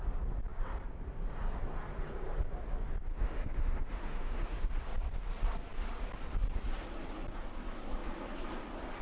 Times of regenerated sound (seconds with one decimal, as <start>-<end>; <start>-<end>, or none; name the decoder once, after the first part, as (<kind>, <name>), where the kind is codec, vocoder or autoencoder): 3.1-4.7 (autoencoder, DAC-VAE)

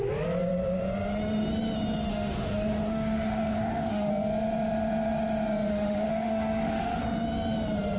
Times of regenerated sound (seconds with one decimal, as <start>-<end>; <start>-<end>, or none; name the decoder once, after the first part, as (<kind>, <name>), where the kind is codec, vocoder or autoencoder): 2.1-4.1 (autoencoder, DAC-VAE); 5.7-7.0